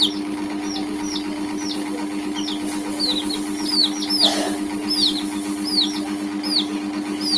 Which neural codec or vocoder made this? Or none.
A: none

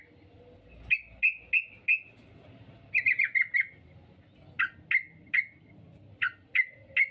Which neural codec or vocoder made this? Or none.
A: none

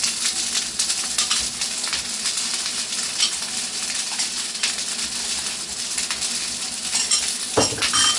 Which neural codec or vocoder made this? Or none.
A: none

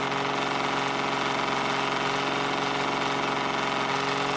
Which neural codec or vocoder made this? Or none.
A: none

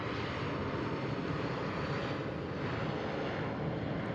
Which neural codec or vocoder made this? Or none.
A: none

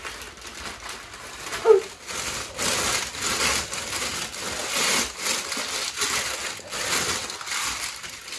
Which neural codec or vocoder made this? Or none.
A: none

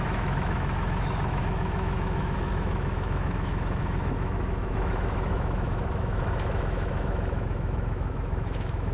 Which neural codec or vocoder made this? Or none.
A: autoencoder, DAC-VAE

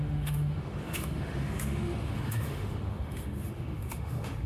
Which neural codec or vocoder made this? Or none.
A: autoencoder, DAC-VAE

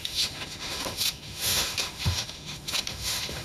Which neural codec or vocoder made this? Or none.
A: autoencoder, DAC-VAE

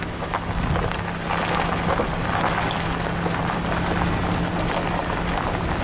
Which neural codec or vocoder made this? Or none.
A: none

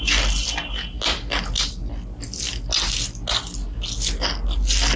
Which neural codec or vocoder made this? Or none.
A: none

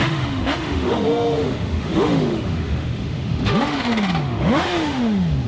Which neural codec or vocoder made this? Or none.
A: autoencoder, DAC-VAE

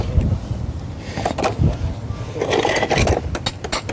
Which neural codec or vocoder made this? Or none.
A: none